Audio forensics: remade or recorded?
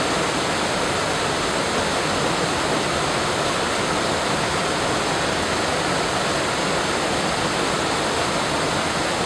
recorded